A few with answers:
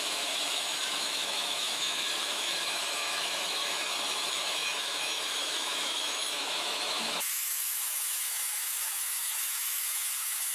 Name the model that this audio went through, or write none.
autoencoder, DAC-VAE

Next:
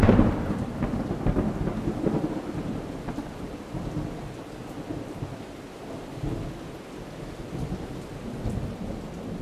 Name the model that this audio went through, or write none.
none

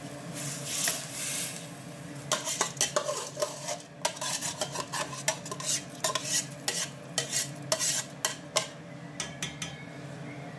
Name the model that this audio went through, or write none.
none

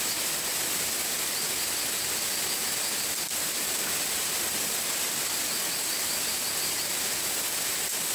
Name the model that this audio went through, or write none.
vocoder, BigVGAN v2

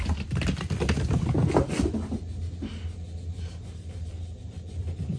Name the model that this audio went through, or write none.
none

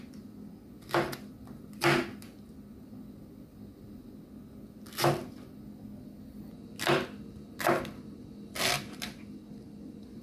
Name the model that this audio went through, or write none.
none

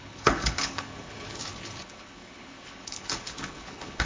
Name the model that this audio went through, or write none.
codec, HILCodec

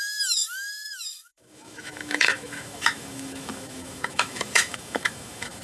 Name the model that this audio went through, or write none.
autoencoder, DAC-VAE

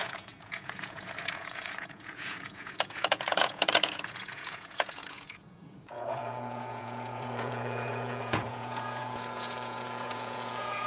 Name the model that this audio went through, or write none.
vocoder, Vocos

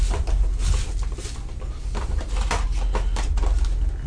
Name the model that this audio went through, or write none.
none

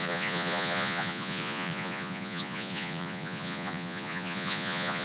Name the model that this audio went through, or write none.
vocoder, Vocos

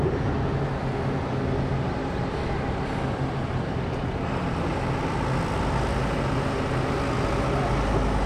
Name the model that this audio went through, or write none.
none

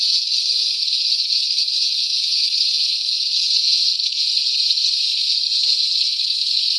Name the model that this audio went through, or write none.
vocoder, Vocos